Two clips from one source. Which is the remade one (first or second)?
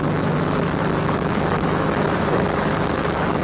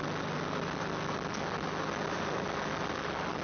first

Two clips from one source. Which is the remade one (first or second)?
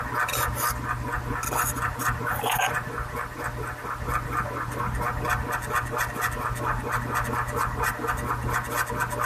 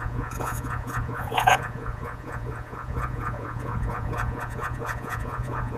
second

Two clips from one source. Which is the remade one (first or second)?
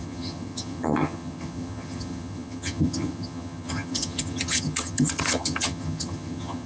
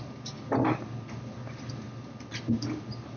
first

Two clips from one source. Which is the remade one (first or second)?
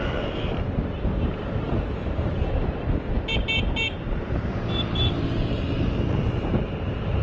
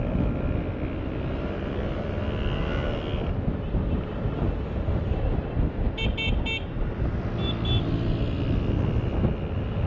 first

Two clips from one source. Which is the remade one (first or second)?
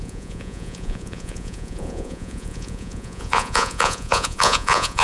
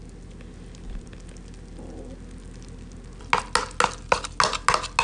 first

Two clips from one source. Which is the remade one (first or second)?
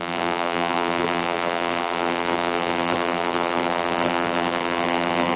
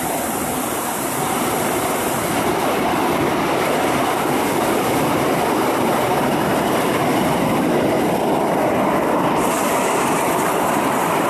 first